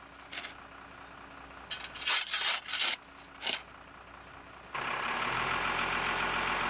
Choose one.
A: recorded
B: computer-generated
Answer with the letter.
A